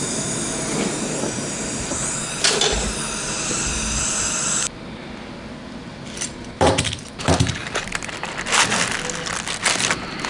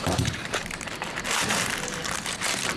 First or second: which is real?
first